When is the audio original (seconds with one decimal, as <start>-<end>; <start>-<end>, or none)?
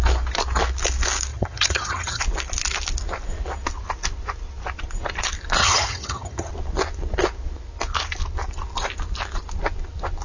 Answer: 0.0-1.3; 2.2-5.6; 6.5-10.2